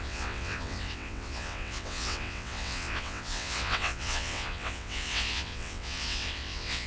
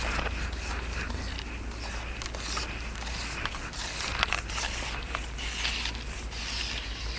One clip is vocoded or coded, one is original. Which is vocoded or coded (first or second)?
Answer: first